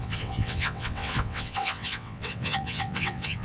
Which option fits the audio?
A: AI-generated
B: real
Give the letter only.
A